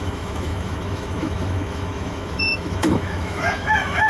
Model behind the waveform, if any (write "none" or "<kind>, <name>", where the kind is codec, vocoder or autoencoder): autoencoder, DAC-VAE